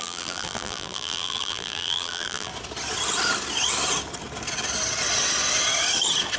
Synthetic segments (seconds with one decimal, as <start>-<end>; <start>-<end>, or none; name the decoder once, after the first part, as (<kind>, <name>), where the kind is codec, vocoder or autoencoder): 0.0-2.5 (vocoder, BigVGAN v2)